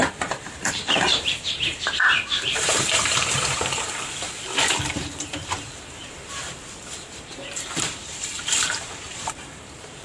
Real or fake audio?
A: fake